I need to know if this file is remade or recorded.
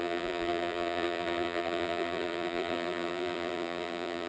remade